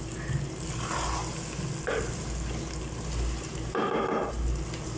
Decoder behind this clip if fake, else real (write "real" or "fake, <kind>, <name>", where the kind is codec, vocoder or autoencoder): real